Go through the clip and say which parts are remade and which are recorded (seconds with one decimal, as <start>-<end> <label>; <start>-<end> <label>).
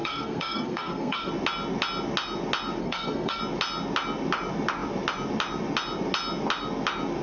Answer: 0.0-1.3 remade; 1.3-2.8 recorded; 2.8-3.4 remade; 3.4-7.2 recorded